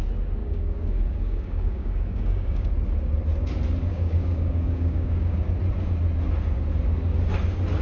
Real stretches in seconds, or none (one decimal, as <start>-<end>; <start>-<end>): 0.0-0.4; 2.7-3.9; 5.4-7.8